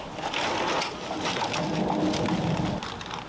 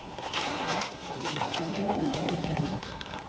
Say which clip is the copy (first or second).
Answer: second